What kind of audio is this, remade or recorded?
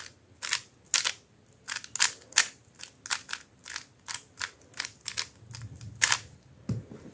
recorded